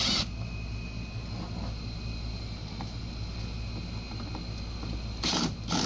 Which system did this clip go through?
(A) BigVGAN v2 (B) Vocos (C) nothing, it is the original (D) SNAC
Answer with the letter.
C